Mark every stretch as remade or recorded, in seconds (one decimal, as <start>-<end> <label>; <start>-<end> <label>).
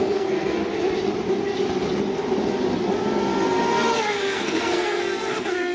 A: 0.0-0.6 remade; 0.6-4.0 recorded; 4.0-5.7 remade